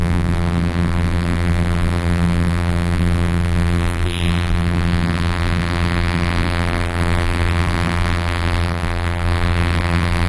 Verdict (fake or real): fake